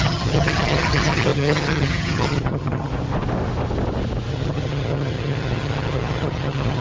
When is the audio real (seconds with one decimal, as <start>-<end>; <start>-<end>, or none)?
2.9-4.3